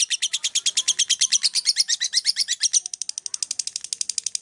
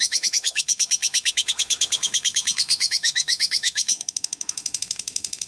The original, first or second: first